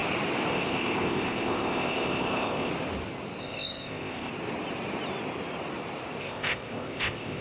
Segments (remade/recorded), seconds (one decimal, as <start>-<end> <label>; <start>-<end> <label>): 0.0-0.5 recorded; 0.5-2.7 remade; 2.7-3.4 recorded; 3.4-4.3 remade; 4.3-6.2 recorded; 6.2-7.4 remade